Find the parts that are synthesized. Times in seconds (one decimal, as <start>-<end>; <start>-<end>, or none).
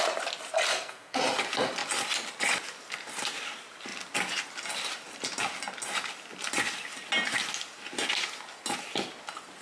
0.7-1.2